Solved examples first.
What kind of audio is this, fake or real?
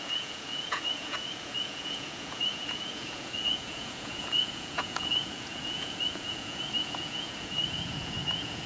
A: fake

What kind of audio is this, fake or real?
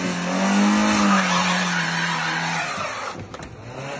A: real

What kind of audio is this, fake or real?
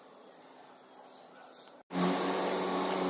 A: real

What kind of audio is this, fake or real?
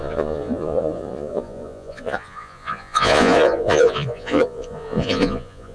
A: fake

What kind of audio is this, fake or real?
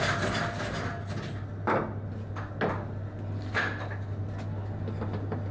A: real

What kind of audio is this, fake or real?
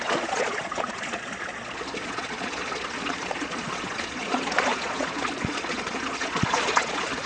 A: fake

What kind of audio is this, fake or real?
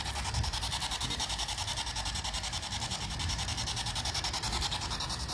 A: real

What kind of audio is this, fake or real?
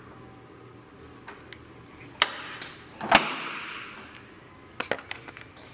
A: real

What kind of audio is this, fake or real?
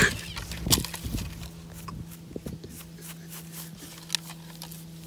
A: real